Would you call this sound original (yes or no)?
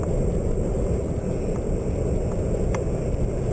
yes